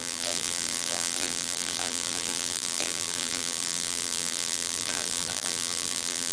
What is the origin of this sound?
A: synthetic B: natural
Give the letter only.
A